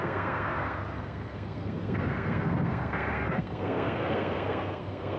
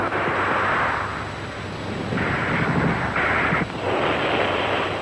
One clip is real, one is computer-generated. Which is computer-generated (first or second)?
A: first